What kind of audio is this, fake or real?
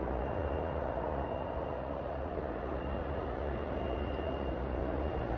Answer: fake